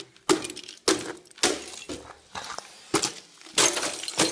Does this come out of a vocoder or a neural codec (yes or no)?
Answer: no